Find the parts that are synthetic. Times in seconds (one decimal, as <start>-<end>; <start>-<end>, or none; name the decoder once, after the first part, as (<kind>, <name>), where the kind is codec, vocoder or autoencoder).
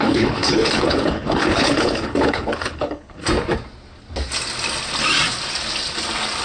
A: 0.0-3.2 (codec, HILCodec)